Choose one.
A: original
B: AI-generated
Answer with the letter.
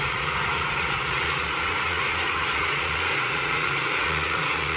B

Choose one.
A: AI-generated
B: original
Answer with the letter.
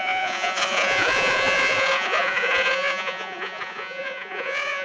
A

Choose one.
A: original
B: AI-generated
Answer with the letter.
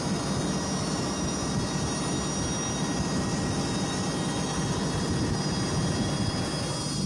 A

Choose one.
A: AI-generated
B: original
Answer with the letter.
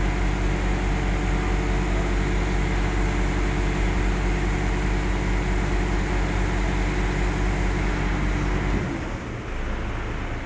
B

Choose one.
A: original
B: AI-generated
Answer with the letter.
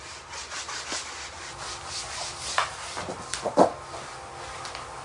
A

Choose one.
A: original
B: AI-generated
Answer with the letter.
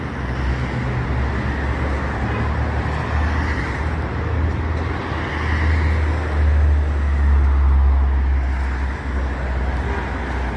A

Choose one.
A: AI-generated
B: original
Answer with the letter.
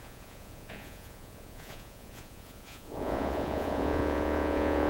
A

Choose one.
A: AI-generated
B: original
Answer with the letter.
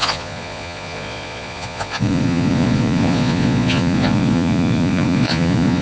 A